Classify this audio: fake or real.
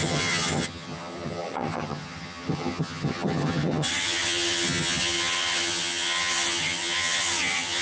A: fake